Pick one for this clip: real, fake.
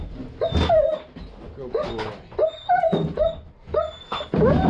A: real